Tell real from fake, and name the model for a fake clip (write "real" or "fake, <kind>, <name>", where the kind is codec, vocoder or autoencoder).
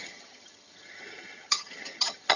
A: fake, vocoder, HiFi-GAN